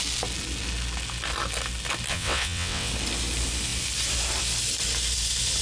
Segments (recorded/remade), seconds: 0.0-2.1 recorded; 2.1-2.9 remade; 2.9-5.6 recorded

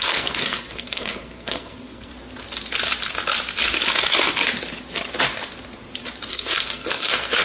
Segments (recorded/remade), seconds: 0.0-2.1 remade; 2.1-6.3 recorded; 6.3-7.4 remade

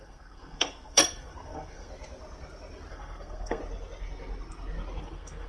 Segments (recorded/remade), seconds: 0.0-1.9 remade; 1.9-2.9 recorded; 2.9-3.6 remade; 3.6-5.0 recorded; 5.0-5.5 remade

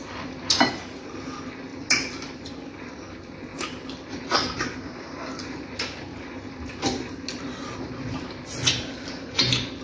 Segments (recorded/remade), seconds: 0.0-3.5 recorded; 3.5-4.2 remade; 4.2-9.8 recorded